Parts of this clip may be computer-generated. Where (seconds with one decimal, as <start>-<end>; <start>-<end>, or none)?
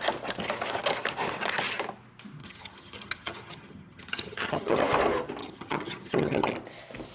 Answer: 2.4-4.8; 5.4-6.5